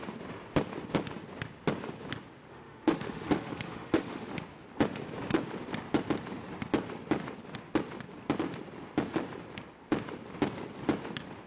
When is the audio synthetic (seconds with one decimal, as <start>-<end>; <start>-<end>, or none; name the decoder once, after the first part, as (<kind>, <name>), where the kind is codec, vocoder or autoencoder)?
2.5-4.3 (autoencoder, DAC-VAE)